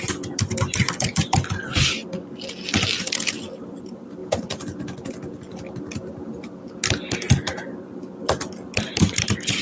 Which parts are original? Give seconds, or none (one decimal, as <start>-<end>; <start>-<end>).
2.0-2.9; 4.2-7.3